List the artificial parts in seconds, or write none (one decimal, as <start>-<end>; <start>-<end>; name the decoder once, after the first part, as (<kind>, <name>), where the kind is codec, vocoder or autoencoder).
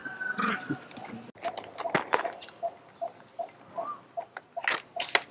none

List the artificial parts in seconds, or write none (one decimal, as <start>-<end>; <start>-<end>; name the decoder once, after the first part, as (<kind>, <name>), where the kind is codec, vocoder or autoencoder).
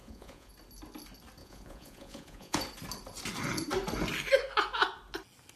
0.0-0.5 (vocoder, Vocos); 1.4-2.6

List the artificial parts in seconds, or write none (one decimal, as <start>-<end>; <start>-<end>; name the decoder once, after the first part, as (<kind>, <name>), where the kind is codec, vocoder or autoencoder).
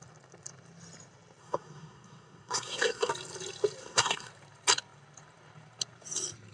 1.4-3.1 (codec, SNAC); 3.8-4.3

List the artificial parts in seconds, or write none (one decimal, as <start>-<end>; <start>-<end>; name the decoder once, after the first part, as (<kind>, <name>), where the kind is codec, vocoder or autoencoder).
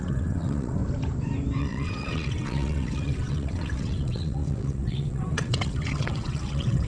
0.0-0.8 (vocoder, WaveNeXt); 1.6-6.9